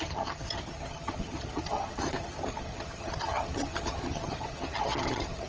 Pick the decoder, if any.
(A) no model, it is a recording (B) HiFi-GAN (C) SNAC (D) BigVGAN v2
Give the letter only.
B